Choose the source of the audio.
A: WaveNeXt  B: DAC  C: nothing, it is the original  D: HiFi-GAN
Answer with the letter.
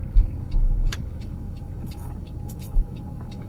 B